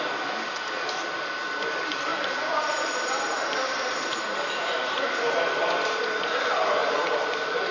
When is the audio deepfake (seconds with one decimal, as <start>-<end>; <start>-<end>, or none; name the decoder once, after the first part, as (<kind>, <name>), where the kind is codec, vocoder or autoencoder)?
2.1-5.4 (vocoder, BigVGAN v2); 6.8-7.7